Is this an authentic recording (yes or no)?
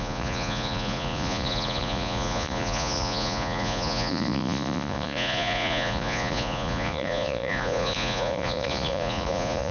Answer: no